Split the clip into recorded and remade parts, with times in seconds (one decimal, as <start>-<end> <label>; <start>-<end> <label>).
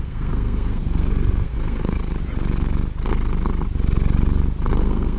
0.0-2.0 remade; 2.0-4.8 recorded; 4.8-5.2 remade